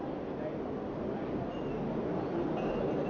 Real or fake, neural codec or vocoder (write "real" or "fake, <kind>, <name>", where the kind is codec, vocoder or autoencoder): real